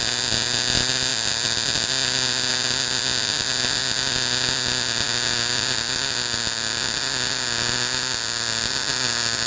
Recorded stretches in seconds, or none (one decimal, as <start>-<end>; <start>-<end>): 0.0-9.5